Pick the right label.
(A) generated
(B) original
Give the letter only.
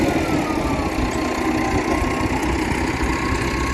B